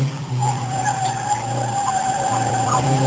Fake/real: fake